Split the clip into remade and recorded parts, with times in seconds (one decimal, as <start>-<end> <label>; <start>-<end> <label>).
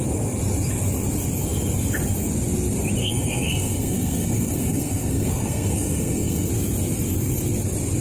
0.0-3.0 recorded; 3.0-6.5 remade; 6.5-8.0 recorded